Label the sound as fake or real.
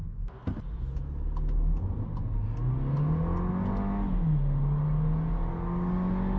real